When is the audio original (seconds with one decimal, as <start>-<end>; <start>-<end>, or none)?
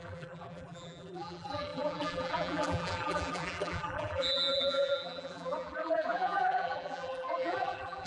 none